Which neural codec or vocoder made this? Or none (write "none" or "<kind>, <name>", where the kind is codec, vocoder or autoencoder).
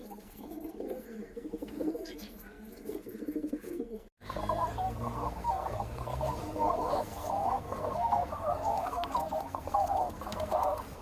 codec, SNAC